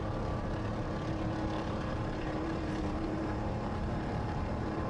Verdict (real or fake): fake